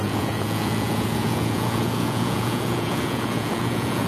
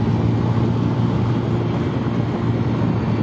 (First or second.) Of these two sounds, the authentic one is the second